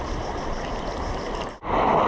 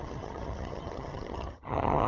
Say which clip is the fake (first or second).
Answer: second